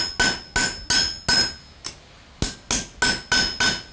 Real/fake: real